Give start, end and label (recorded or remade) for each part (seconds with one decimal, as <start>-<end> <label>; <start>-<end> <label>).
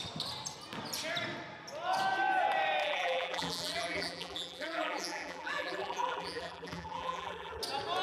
0.0-2.8 recorded; 2.8-7.6 remade; 7.6-8.0 recorded